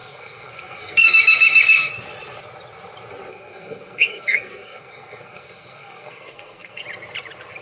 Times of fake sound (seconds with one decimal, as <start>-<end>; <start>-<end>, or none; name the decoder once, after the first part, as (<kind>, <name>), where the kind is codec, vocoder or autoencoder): 0.0-1.9 (codec, SNAC); 3.3-6.8